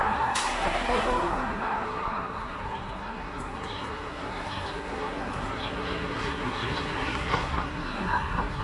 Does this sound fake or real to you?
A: fake